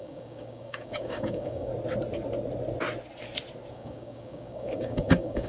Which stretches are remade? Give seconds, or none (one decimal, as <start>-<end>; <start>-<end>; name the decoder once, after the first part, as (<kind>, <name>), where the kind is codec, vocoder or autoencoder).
0.0-1.7 (codec, DAC); 3.7-5.5